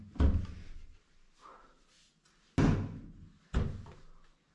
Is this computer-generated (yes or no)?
no